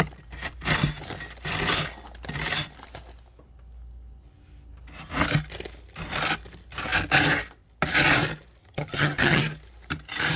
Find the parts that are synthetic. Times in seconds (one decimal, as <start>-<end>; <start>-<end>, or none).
8.6-9.4